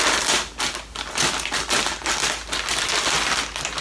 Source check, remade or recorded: recorded